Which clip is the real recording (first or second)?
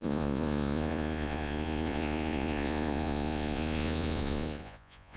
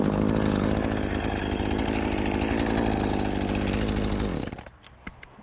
second